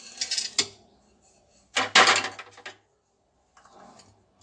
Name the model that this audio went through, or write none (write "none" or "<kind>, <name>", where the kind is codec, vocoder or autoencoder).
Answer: none